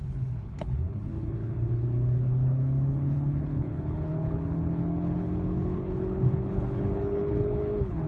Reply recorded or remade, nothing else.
remade